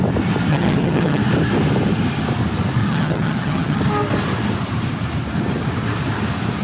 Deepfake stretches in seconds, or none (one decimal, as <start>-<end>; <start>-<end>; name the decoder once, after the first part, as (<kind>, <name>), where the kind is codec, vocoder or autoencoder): 0.5-1.2 (vocoder, HiFi-GAN); 2.8-3.8